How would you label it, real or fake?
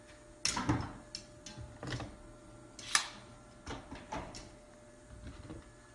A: real